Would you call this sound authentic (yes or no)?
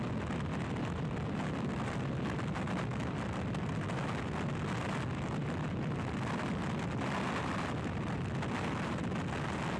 yes